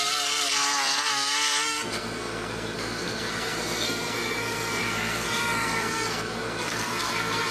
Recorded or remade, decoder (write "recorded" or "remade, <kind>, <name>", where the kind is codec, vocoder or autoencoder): remade, codec, SNAC